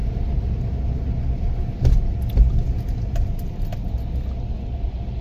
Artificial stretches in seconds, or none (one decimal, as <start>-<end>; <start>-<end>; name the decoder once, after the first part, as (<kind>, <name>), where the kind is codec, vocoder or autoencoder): 0.0-1.9 (vocoder, BigVGAN v2)